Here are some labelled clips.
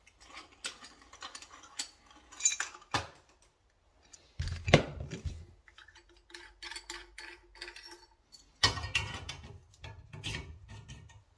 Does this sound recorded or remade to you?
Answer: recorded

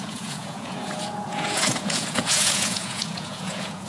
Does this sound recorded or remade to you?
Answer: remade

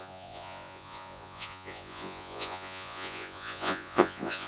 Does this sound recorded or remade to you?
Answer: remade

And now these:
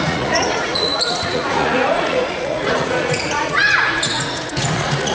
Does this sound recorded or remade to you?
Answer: remade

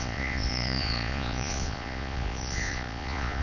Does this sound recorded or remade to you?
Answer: remade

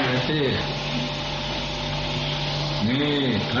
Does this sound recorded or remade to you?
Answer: recorded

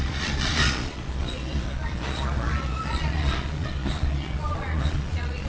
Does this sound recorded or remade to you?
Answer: remade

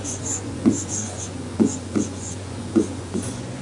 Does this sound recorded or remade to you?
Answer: remade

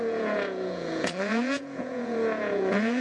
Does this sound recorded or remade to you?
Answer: remade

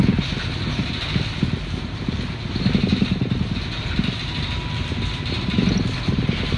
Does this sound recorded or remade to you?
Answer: recorded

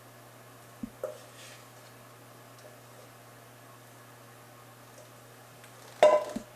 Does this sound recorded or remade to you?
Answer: recorded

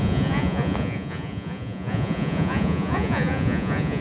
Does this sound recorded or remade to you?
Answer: remade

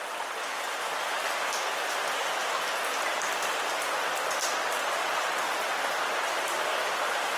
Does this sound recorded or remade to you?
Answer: recorded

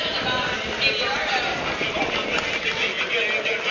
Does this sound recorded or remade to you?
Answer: recorded